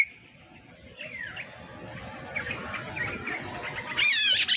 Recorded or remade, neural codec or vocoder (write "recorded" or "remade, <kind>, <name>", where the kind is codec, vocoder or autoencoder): recorded